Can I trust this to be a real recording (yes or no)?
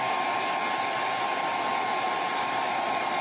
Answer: yes